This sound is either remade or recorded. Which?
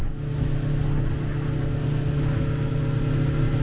recorded